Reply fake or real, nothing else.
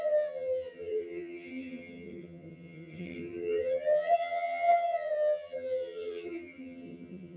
fake